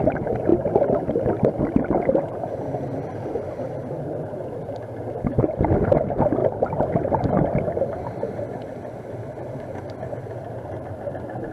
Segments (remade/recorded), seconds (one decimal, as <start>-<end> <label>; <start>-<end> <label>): 0.0-11.5 recorded